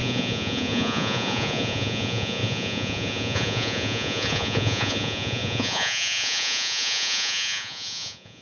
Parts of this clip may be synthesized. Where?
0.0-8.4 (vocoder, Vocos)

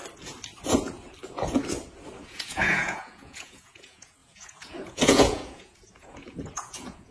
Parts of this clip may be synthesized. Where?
2.2-7.1 (vocoder, Vocos)

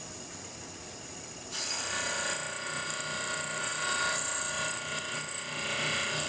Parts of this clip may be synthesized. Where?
none

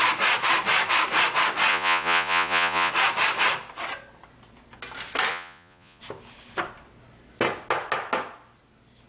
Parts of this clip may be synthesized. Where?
1.7-2.9 (vocoder, Vocos); 5.3-6.0